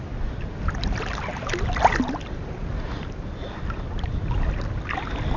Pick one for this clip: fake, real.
real